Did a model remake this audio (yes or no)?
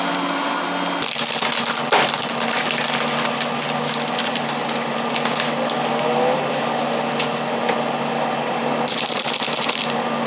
no